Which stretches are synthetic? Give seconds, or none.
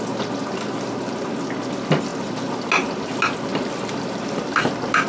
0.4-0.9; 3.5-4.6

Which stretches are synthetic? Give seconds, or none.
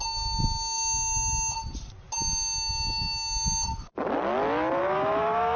4.8-5.6